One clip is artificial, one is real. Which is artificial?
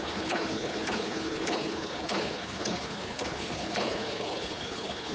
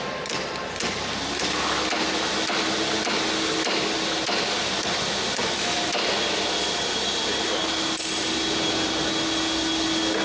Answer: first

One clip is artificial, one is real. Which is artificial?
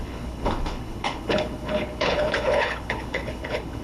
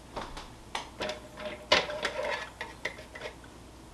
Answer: first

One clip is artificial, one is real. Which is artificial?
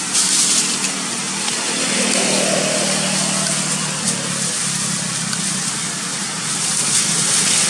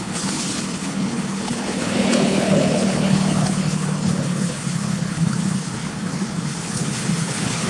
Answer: second